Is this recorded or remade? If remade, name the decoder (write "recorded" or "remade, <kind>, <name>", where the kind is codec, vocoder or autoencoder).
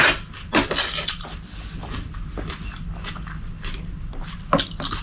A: recorded